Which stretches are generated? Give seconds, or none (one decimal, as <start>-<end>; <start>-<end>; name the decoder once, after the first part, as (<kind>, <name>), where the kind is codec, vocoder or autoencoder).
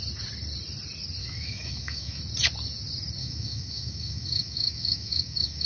1.2-2.2 (autoencoder, DAC-VAE); 3.2-5.7